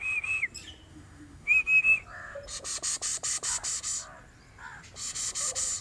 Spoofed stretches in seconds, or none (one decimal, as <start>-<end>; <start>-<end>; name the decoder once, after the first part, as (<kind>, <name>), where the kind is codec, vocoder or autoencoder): 0.9-1.8 (autoencoder, DAC-VAE)